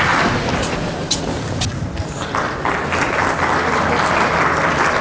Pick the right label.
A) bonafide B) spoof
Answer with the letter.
A